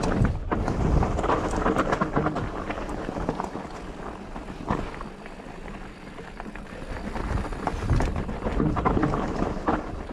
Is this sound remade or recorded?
recorded